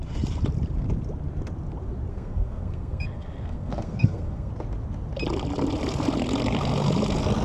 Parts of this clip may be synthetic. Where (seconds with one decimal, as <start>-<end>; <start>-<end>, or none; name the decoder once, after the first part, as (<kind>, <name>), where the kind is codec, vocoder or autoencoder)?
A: 2.1-4.5 (codec, SNAC)